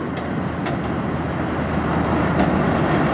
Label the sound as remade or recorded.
recorded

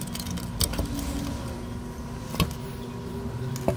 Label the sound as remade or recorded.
recorded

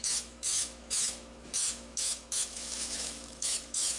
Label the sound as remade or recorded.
remade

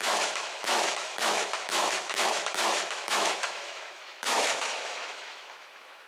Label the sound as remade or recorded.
remade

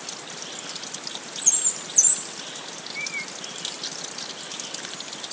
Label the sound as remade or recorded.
recorded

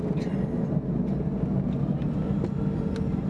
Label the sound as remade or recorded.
recorded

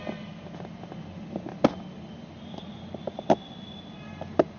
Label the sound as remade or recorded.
recorded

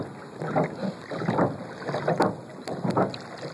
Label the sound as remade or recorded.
recorded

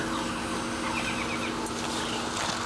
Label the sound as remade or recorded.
recorded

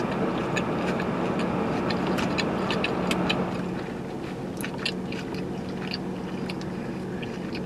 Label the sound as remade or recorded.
recorded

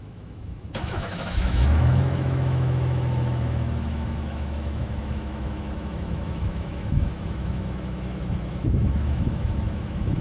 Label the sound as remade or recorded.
remade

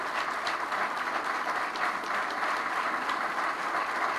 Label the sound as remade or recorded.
recorded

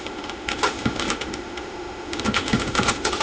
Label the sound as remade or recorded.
remade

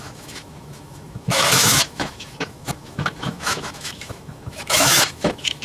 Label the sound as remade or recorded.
remade